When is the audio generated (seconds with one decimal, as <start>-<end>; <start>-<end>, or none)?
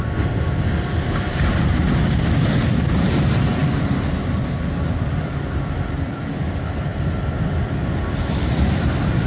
none